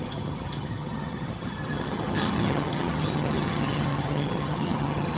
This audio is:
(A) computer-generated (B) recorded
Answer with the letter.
A